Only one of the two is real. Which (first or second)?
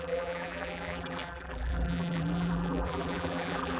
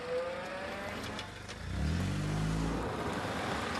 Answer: second